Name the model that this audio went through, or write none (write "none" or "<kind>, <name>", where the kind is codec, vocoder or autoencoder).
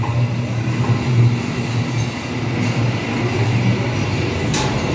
none